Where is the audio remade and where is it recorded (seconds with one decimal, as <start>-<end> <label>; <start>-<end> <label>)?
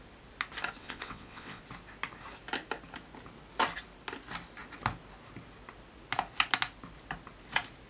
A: 0.0-0.8 recorded; 0.8-1.6 remade; 1.6-7.9 recorded